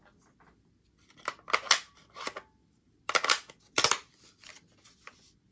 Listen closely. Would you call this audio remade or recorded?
recorded